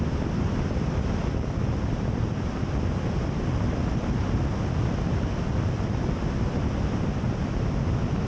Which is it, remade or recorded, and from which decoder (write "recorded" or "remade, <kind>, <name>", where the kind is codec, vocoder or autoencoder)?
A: recorded